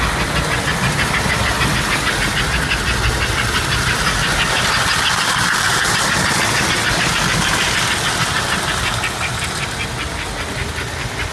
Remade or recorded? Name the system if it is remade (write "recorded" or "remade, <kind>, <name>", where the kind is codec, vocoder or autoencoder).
recorded